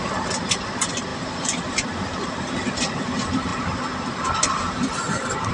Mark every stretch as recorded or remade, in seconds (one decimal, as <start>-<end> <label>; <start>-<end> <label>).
0.0-3.5 remade; 3.5-4.5 recorded; 4.5-5.5 remade